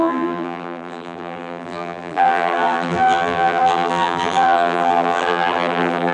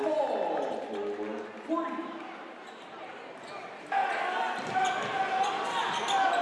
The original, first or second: second